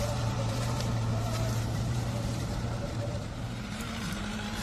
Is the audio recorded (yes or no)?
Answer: no